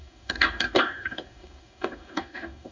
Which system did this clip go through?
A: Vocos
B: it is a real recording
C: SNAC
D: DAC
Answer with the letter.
D